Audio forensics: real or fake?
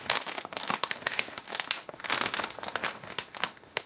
fake